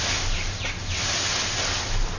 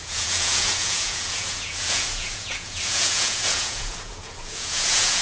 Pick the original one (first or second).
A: first